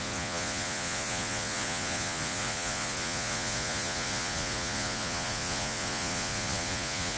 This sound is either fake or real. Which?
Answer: fake